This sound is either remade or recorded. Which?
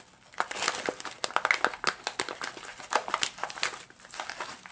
recorded